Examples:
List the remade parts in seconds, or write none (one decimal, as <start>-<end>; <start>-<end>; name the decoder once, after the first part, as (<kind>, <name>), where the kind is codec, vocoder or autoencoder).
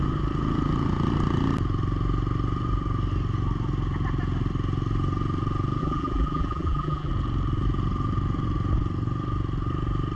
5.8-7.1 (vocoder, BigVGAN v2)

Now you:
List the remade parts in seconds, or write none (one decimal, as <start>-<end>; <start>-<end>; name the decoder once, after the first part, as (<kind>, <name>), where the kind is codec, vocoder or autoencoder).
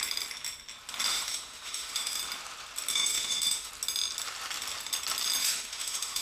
1.1-2.2 (autoencoder, DAC-VAE); 2.9-3.7; 5.4-6.2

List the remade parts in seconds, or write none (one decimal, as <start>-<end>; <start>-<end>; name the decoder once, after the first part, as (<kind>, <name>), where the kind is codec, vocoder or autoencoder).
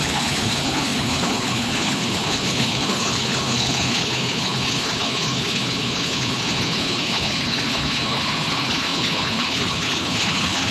0.0-10.7 (codec, HILCodec)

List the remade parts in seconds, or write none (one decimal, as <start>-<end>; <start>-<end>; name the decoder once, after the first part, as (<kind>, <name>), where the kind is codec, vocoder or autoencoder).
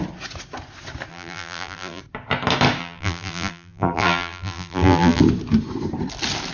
1.1-2.0 (vocoder, BigVGAN v2); 2.8-5.2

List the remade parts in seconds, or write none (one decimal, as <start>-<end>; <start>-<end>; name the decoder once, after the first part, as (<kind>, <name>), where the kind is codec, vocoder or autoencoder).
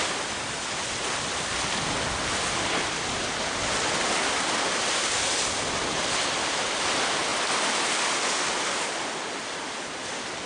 none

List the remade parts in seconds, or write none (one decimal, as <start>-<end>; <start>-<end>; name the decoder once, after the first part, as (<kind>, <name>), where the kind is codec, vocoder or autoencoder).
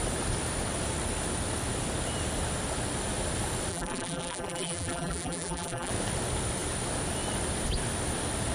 3.7-5.9 (vocoder, BigVGAN v2)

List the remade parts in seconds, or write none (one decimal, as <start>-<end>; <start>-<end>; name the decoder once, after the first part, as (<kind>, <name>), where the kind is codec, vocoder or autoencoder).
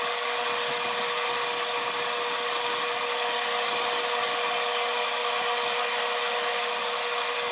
none